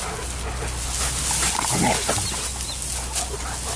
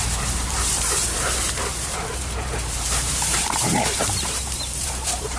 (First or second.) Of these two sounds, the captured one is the first